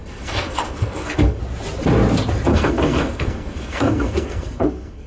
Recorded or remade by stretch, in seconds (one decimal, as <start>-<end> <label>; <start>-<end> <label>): 0.0-1.4 remade; 1.4-2.5 recorded; 2.5-5.1 remade